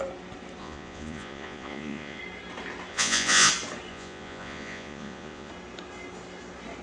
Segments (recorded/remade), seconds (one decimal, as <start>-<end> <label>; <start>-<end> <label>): 0.0-0.6 recorded; 0.6-2.2 remade; 2.2-2.9 recorded; 2.9-3.5 remade; 3.5-3.9 recorded; 3.9-5.5 remade; 5.5-6.8 recorded